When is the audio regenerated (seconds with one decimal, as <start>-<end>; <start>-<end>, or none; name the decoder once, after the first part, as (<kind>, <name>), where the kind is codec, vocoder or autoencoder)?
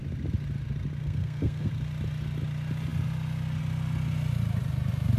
1.0-1.7 (codec, SNAC)